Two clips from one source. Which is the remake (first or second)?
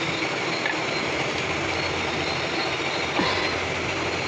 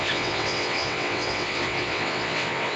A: second